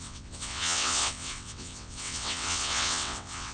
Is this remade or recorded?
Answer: remade